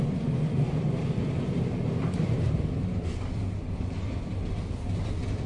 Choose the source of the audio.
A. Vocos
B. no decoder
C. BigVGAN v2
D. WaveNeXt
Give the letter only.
C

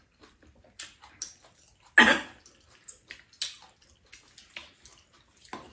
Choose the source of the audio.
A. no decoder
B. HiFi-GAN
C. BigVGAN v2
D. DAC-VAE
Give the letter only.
A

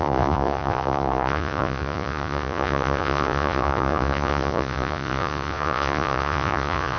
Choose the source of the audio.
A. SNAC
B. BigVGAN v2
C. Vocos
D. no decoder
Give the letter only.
C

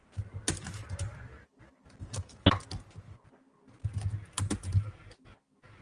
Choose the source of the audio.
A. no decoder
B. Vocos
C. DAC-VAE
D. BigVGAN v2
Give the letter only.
A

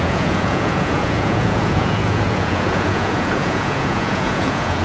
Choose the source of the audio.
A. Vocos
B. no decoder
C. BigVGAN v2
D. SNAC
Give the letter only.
A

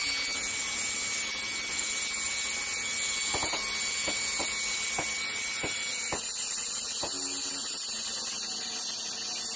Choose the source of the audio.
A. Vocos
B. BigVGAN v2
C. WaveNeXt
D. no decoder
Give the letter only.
D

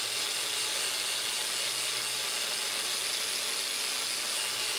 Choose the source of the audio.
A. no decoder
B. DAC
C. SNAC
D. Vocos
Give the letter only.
A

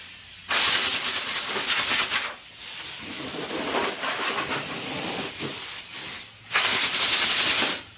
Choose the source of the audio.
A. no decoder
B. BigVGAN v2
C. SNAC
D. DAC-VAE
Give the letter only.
A